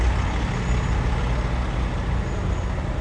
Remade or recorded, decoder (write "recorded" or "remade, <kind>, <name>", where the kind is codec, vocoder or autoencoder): recorded